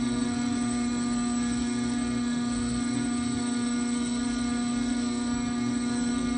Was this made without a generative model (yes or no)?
no